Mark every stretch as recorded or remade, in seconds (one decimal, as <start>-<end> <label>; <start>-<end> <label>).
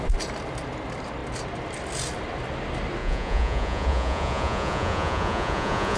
0.0-3.0 recorded; 3.0-6.0 remade